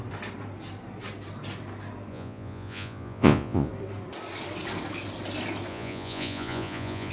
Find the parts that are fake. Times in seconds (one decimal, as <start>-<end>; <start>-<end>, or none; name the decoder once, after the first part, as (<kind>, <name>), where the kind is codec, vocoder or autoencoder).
2.1-3.7 (vocoder, Vocos); 5.7-7.1